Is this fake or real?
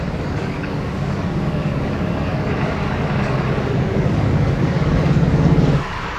fake